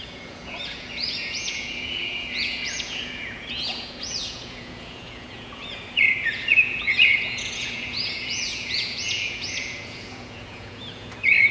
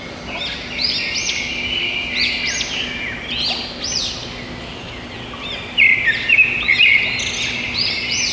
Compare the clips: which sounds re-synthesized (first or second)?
first